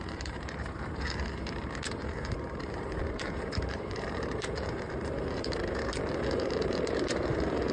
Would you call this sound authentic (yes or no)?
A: no